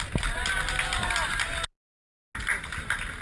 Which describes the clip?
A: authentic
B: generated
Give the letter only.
A